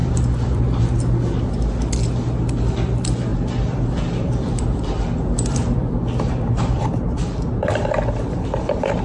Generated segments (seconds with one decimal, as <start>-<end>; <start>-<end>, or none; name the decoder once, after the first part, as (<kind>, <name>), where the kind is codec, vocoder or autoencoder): 0.0-0.8 (vocoder, BigVGAN v2); 3.3-7.4